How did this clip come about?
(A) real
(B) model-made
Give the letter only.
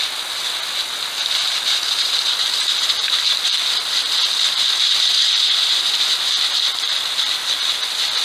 A